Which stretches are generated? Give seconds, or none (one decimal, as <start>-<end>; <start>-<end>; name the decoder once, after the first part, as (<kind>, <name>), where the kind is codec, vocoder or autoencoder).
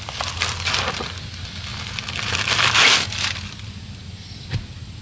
none